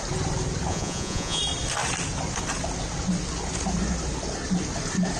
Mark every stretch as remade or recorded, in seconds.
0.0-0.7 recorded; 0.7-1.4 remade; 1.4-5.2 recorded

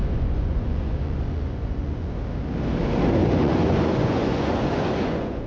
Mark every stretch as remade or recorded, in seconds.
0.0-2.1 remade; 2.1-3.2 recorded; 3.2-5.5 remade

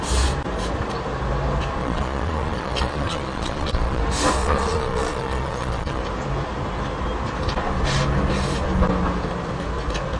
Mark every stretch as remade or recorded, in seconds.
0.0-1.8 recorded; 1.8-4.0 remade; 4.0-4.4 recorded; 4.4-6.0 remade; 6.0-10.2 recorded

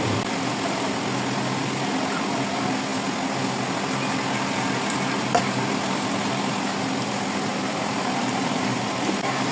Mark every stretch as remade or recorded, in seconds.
0.0-7.5 recorded; 7.5-9.5 remade

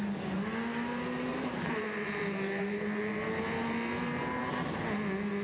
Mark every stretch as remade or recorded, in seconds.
0.0-1.3 recorded; 1.3-4.5 remade; 4.5-5.4 recorded

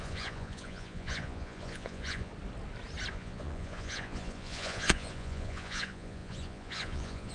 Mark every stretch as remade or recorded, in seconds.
0.0-2.3 remade; 2.3-3.1 recorded; 3.1-7.3 remade